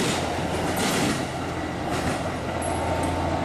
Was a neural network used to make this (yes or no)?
no